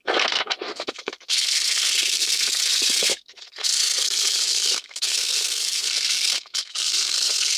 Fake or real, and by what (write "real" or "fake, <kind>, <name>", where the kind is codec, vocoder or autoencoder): fake, codec, SNAC